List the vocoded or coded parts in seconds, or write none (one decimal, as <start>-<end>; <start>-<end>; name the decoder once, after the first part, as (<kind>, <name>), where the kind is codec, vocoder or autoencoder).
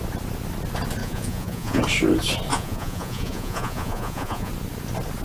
1.0-1.8 (vocoder, Vocos); 2.5-4.5